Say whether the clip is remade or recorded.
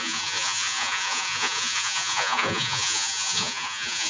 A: remade